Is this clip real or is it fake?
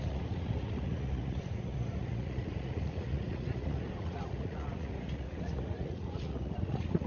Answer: fake